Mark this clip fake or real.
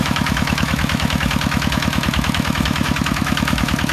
fake